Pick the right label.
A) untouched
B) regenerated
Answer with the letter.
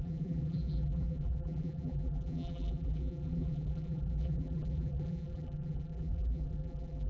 B